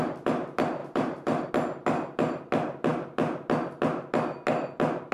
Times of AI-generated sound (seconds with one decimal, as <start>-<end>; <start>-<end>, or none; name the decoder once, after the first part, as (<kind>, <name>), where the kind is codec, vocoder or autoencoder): 0.8-1.5 (vocoder, BigVGAN v2)